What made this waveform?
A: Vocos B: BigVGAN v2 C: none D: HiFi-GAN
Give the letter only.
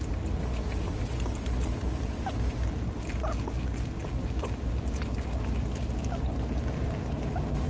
C